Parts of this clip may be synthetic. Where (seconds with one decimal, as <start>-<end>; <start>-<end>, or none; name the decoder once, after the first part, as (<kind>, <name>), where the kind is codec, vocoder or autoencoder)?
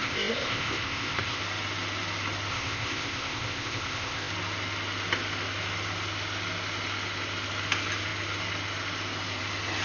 0.0-1.4 (codec, ZipCodec); 2.5-4.3